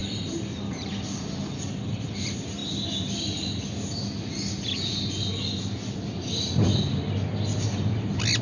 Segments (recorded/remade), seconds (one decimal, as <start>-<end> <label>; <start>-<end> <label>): 0.0-1.7 remade; 1.7-8.4 recorded